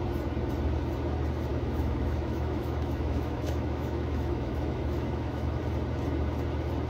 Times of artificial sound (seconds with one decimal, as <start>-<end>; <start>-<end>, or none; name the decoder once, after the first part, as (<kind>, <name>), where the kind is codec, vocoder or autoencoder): 1.5-5.6 (autoencoder, DAC-VAE)